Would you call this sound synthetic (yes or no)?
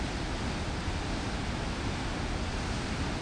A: no